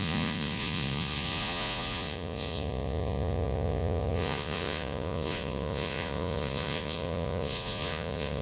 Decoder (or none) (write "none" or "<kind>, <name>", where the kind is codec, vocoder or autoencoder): vocoder, Vocos